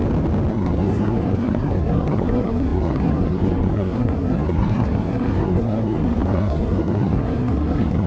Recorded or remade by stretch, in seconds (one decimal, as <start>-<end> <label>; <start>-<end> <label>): 0.0-0.5 recorded; 0.5-8.1 remade